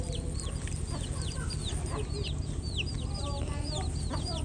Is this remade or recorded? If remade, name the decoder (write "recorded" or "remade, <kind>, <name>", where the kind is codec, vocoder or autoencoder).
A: recorded